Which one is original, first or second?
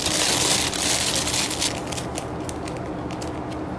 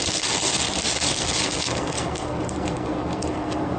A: first